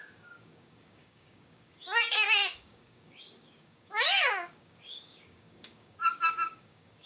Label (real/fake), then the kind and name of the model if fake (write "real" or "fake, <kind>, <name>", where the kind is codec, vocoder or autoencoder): fake, codec, DAC